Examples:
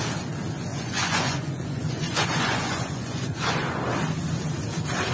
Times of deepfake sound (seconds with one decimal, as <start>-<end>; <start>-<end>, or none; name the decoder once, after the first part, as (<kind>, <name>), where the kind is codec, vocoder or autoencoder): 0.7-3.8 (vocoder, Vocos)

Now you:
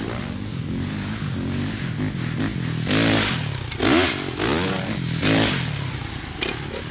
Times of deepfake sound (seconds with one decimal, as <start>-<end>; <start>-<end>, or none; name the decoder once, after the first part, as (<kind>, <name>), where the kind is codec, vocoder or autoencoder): 0.5-1.0 (codec, DAC)

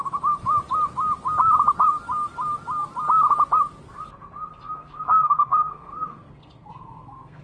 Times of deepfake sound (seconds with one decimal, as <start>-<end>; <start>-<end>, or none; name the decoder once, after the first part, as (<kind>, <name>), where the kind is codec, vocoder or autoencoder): 4.5-7.4 (codec, SNAC)